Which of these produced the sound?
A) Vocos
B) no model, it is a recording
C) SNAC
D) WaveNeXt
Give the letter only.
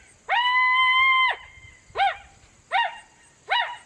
B